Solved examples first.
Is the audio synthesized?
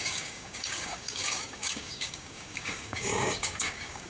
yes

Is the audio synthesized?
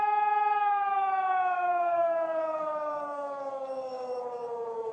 yes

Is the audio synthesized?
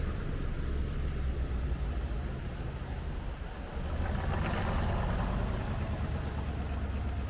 no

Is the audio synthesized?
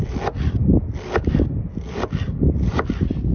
no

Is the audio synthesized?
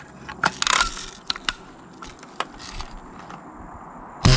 no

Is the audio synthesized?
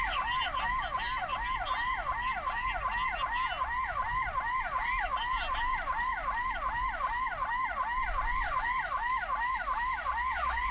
no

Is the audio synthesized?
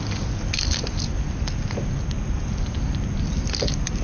no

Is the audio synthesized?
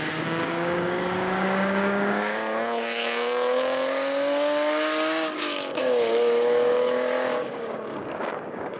yes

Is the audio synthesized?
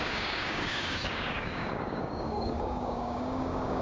yes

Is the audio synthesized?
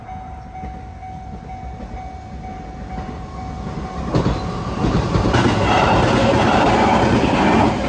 no